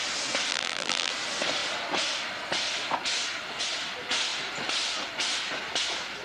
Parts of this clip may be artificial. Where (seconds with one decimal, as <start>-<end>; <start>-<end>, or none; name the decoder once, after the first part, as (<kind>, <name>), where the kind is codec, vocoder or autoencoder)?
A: 0.5-1.1 (vocoder, BigVGAN v2)